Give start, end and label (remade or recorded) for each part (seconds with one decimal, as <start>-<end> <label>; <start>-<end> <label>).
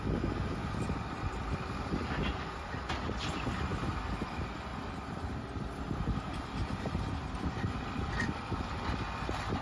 0.0-0.6 recorded; 0.6-2.1 remade; 2.1-4.7 recorded; 4.7-5.8 remade; 5.8-6.3 recorded; 6.3-8.9 remade; 8.9-9.6 recorded